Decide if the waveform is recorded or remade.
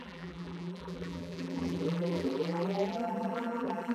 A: remade